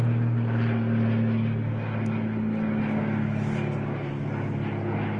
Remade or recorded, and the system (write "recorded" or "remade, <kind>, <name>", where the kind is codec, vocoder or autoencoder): recorded